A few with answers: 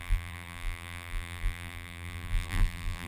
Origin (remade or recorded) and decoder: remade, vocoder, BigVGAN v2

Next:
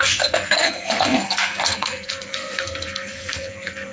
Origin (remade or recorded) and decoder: remade, codec, SNAC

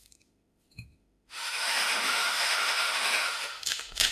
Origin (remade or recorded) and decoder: remade, autoencoder, DAC-VAE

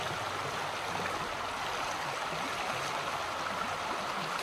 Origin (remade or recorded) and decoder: recorded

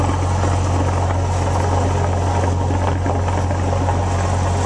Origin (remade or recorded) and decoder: recorded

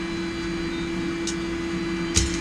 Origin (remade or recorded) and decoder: recorded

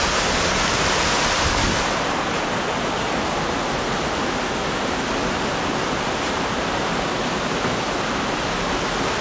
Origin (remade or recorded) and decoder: recorded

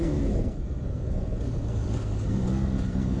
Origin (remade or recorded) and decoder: remade, codec, SNAC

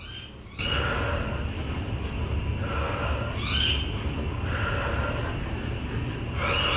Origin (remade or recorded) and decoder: recorded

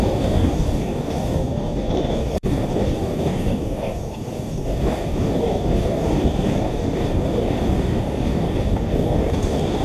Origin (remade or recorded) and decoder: remade, codec, DAC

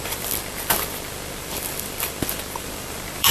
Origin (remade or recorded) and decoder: remade, vocoder, BigVGAN v2